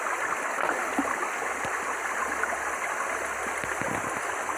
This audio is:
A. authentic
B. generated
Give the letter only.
A